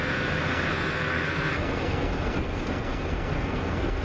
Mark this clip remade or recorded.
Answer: remade